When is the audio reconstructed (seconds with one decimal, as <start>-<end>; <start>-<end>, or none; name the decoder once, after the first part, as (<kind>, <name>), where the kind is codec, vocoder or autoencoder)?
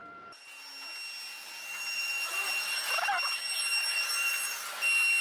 0.0-0.5 (vocoder, BigVGAN v2); 1.7-4.3